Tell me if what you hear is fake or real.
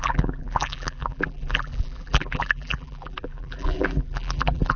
fake